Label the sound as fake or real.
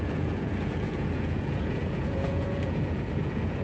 fake